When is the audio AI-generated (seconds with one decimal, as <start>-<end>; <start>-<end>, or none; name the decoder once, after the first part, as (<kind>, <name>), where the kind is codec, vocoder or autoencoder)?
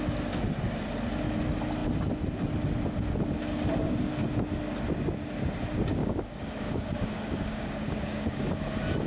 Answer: 6.0-8.4 (codec, DAC)